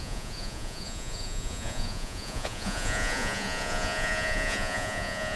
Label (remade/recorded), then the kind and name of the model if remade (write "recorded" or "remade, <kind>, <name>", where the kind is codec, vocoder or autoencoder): remade, vocoder, Vocos